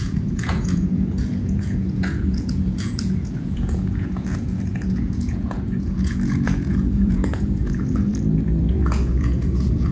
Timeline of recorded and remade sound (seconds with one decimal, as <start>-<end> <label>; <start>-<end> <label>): 0.0-8.1 remade; 8.1-8.7 recorded; 8.7-9.9 remade